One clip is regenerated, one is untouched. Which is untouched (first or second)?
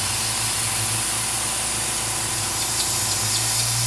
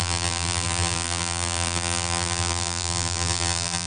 first